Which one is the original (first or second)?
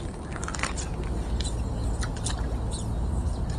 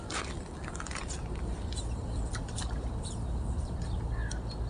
first